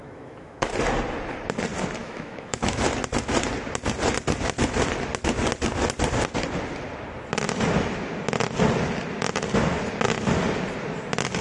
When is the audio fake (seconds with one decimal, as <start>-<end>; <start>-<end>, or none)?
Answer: 0.0-0.7; 2.0-2.8